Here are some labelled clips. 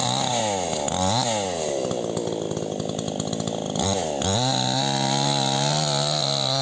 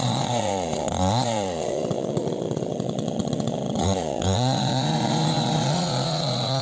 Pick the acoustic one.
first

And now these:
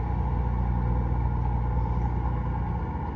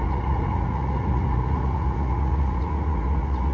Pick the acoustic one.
first